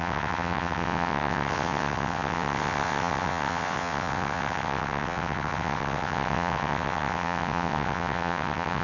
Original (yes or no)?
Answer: no